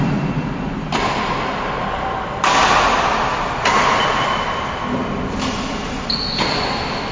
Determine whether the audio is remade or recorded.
recorded